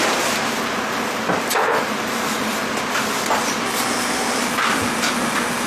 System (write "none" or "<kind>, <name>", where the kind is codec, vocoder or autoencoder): none